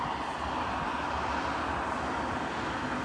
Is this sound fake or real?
real